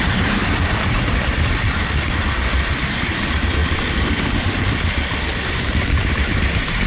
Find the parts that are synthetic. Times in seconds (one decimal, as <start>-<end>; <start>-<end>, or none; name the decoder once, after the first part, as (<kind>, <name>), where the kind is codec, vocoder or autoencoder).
0.0-1.8 (vocoder, BigVGAN v2); 2.7-3.6; 5.5-6.9